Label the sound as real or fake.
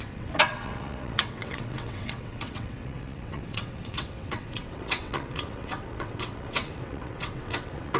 fake